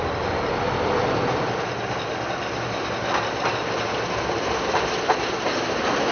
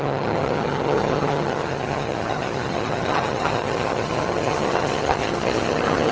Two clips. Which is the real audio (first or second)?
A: first